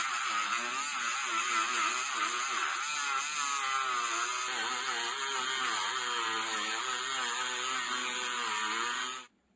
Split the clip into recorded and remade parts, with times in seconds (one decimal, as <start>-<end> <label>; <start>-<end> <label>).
0.0-9.6 recorded